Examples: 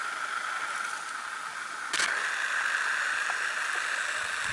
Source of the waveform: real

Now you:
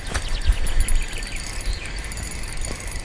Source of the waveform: real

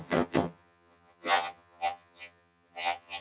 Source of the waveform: fake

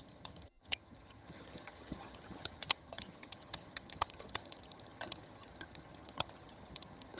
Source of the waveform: fake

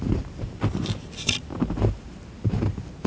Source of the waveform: real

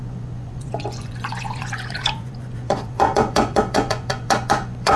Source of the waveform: fake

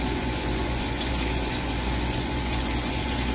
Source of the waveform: fake